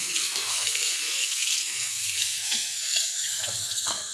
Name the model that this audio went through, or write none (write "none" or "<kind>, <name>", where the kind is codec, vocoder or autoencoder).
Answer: codec, SNAC